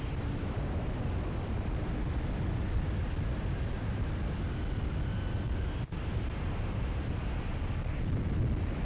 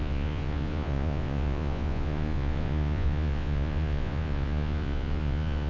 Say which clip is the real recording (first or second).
first